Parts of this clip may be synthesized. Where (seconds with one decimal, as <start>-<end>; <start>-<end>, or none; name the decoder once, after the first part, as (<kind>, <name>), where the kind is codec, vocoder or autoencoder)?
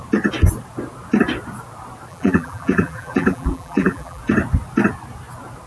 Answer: 2.1-4.2 (vocoder, BigVGAN v2)